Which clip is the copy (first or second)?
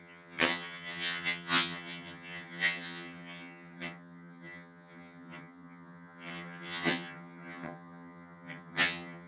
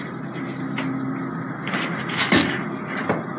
first